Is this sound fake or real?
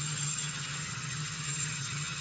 fake